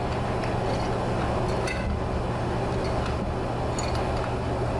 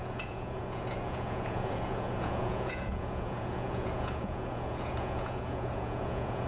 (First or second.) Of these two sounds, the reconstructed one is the second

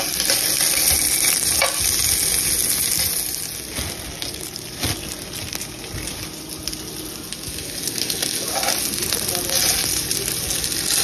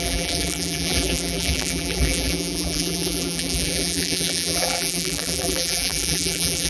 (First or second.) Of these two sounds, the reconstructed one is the second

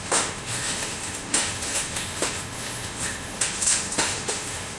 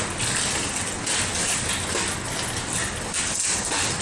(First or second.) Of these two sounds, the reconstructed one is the first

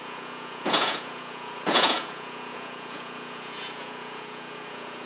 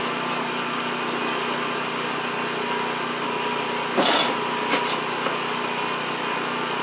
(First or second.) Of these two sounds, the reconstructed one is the first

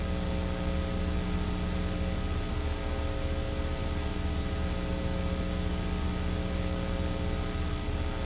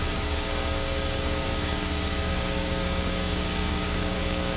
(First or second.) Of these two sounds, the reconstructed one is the second